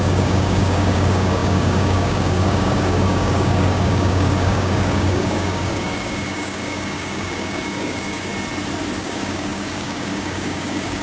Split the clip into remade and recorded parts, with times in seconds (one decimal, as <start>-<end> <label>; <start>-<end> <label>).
0.0-8.3 remade; 8.3-9.0 recorded; 9.0-11.0 remade